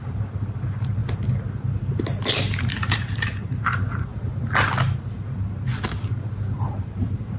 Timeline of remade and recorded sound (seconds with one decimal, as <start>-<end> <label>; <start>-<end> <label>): 0.0-1.0 remade; 1.0-2.6 recorded; 2.6-4.1 remade; 4.1-5.0 recorded; 5.0-5.7 remade; 5.7-6.7 recorded; 6.7-7.4 remade